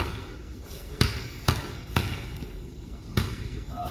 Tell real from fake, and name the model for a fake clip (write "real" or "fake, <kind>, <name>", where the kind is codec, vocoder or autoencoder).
fake, codec, SNAC